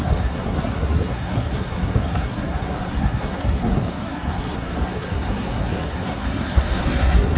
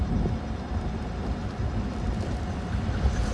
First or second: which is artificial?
first